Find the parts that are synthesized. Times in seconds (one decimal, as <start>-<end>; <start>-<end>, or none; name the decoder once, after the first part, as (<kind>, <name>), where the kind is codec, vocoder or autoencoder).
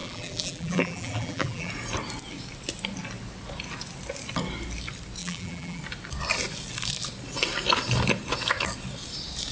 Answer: 0.0-1.7 (vocoder, BigVGAN v2); 5.2-5.8